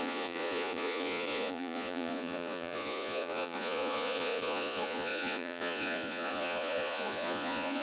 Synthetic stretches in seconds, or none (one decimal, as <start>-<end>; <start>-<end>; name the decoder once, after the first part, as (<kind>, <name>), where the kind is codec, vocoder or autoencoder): 0.0-7.8 (vocoder, Vocos)